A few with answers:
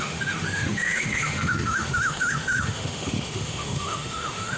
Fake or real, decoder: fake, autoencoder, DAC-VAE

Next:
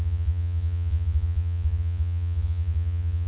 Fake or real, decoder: fake, vocoder, Vocos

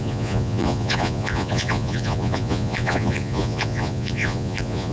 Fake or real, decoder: fake, vocoder, Vocos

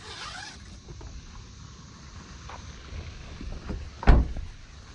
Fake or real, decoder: real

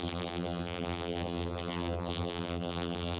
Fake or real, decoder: fake, vocoder, BigVGAN v2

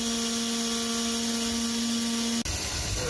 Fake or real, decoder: real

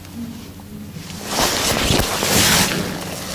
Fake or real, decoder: real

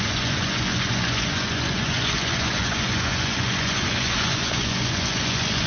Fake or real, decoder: fake, vocoder, Vocos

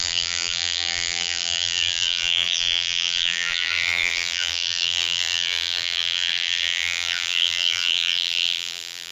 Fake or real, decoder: fake, vocoder, BigVGAN v2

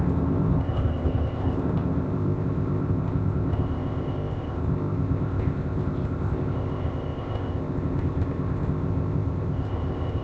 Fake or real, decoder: fake, codec, ZipCodec